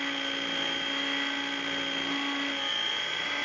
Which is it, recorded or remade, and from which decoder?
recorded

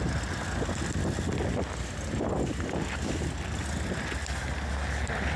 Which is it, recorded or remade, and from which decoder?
recorded